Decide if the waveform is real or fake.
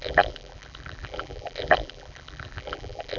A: fake